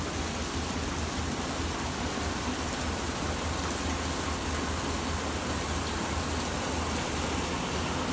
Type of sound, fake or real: real